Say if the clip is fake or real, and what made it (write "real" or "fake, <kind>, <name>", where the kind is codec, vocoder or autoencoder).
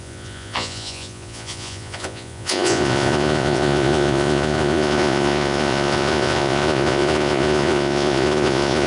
fake, vocoder, Vocos